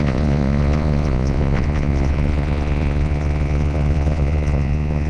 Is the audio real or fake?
fake